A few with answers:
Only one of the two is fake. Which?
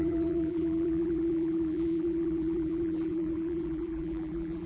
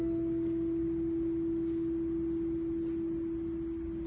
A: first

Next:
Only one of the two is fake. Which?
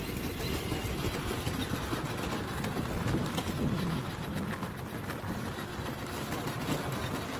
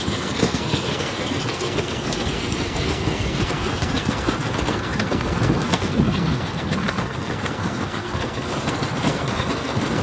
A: second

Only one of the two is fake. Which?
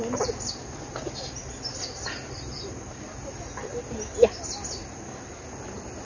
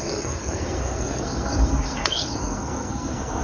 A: second